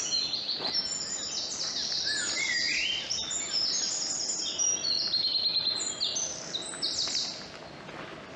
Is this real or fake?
real